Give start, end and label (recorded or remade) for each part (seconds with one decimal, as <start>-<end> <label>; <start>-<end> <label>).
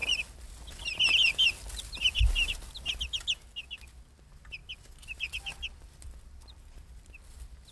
0.0-7.7 recorded